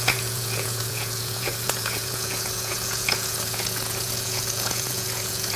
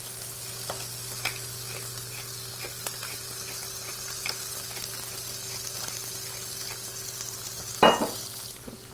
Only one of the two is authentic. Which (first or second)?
second